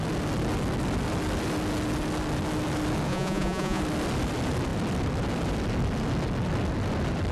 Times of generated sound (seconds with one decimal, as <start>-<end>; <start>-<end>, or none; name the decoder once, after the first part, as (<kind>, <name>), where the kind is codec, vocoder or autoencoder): 3.1-3.8 (vocoder, Vocos)